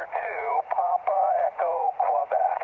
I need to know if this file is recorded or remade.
remade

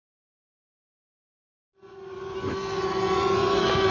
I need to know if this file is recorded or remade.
recorded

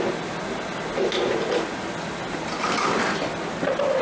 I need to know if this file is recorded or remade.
recorded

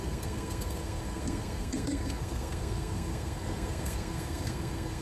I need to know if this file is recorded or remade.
remade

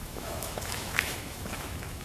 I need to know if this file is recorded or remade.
remade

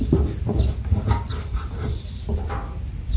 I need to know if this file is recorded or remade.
recorded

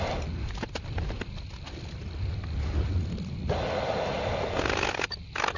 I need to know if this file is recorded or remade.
recorded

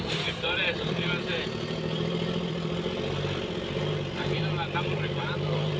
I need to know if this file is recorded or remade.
remade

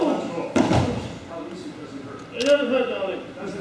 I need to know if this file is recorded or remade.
recorded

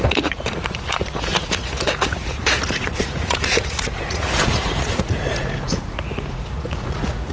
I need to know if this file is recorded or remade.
remade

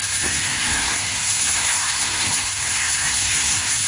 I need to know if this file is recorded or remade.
remade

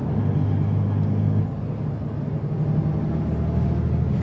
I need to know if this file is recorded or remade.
recorded